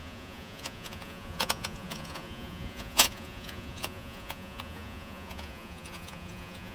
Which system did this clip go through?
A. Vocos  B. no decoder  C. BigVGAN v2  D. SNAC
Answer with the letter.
A